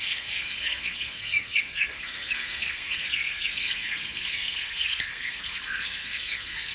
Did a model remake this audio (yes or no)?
yes